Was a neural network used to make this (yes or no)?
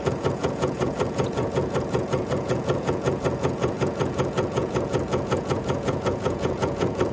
yes